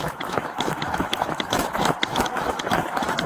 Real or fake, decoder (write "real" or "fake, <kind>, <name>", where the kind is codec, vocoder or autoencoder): fake, autoencoder, DAC-VAE